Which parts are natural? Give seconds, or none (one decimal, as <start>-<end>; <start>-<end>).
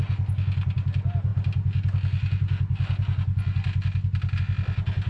0.0-5.1